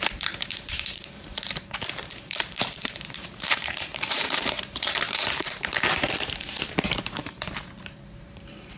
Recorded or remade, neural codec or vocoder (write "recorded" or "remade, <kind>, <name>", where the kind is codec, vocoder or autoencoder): remade, vocoder, BigVGAN v2